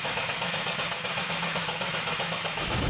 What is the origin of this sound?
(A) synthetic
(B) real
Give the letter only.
A